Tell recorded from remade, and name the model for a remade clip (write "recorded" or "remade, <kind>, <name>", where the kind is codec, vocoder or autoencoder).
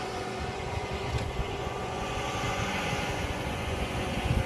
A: remade, vocoder, Vocos